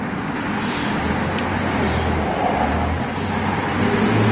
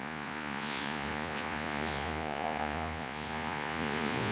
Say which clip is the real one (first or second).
first